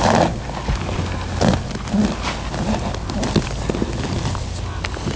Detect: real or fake real